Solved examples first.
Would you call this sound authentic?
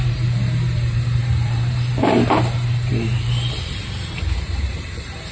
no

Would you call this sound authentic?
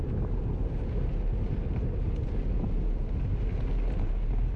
yes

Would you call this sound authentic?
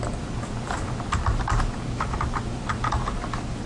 yes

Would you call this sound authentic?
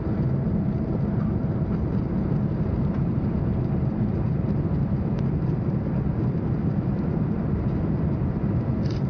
no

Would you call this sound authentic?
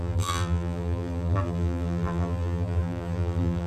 no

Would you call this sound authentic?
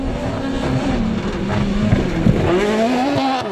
yes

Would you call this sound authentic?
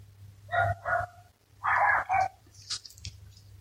no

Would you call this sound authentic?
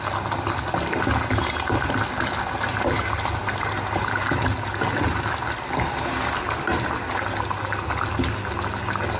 yes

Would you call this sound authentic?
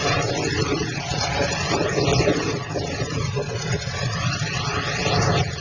yes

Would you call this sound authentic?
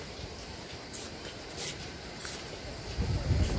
no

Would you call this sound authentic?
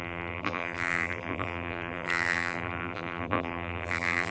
no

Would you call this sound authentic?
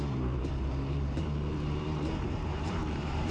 no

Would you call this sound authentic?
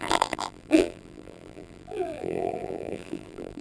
no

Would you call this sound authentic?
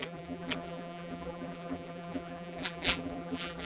no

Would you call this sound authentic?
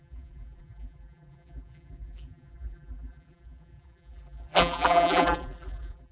no